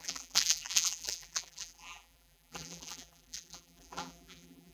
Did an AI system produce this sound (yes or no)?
yes